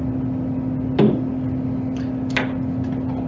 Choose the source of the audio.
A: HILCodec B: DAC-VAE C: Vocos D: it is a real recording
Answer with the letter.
D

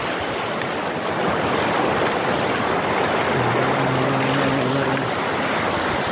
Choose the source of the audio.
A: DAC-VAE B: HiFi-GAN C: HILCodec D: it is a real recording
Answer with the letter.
D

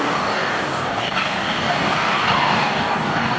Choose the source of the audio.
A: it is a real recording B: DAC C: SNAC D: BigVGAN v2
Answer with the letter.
B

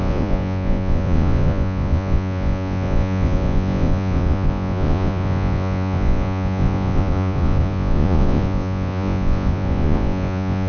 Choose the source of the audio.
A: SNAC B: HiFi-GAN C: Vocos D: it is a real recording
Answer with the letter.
C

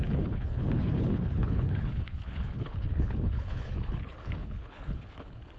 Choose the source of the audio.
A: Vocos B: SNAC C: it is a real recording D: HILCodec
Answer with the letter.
D